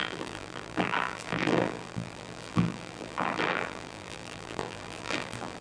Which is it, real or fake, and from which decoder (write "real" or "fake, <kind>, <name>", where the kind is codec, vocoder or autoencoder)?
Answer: fake, vocoder, BigVGAN v2